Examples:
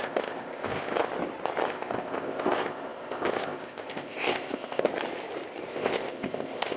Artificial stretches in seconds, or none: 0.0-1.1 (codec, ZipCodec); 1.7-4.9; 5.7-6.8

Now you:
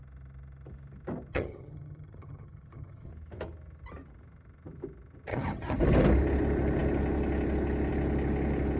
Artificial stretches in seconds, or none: 1.3-3.1 (vocoder, HiFi-GAN); 5.3-5.8

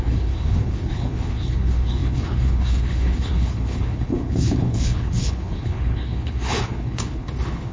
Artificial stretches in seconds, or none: 0.0-7.7 (codec, HILCodec)

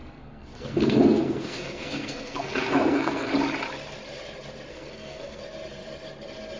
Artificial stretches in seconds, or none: 0.0-3.3 (codec, SNAC); 4.7-5.4

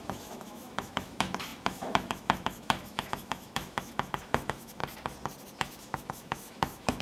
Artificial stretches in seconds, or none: 0.0-4.8 (autoencoder, DAC-VAE); 5.5-7.0

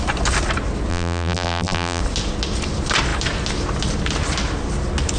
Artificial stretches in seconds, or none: 0.9-2.0 (vocoder, BigVGAN v2)

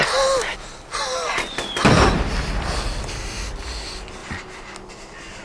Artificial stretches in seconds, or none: none